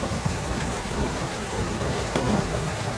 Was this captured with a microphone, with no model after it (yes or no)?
no